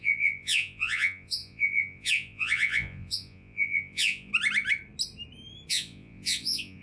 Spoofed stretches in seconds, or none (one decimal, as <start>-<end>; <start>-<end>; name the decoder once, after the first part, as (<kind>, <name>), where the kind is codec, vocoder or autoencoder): 0.0-4.3 (vocoder, Vocos); 5.7-6.8